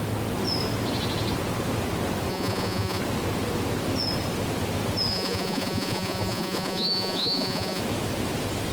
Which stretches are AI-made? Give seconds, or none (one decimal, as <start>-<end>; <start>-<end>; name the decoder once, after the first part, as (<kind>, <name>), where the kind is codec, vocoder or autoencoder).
2.3-3.0 (vocoder, Vocos); 5.1-7.8

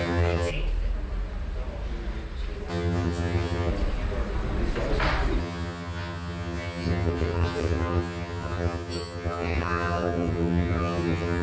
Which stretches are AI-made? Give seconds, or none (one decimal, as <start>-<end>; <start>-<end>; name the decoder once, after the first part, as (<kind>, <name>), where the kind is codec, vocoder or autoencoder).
0.0-0.5 (vocoder, HiFi-GAN); 2.7-3.7; 5.4-11.4